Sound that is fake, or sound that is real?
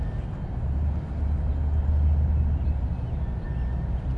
real